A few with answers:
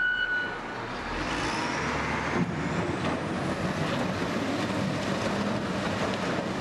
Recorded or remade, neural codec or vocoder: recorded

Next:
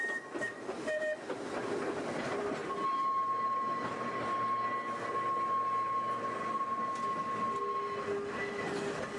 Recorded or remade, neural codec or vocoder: recorded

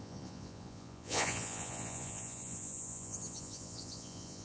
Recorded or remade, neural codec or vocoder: remade, vocoder, Vocos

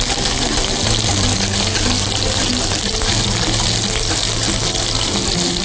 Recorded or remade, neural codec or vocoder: recorded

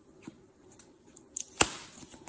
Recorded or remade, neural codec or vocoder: recorded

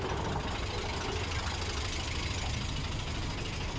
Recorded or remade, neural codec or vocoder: recorded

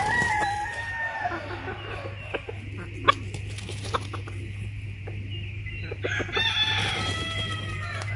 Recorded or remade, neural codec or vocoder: recorded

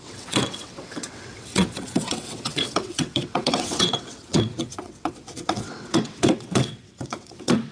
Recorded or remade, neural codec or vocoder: remade, vocoder, WaveNeXt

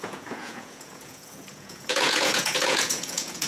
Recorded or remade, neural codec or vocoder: remade, vocoder, Vocos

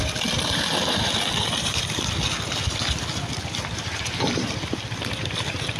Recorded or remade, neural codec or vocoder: recorded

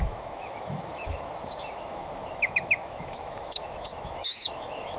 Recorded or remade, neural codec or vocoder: remade, autoencoder, DAC-VAE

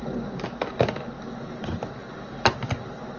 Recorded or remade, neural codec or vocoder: recorded